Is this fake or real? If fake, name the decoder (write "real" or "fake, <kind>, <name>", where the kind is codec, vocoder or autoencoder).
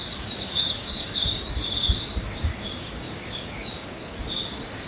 fake, codec, DAC